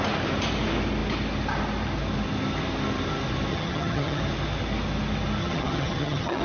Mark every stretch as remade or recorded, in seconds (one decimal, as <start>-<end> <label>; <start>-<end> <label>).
0.0-3.5 recorded; 3.5-4.2 remade; 4.2-5.4 recorded; 5.4-6.4 remade